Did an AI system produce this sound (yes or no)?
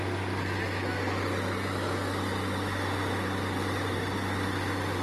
no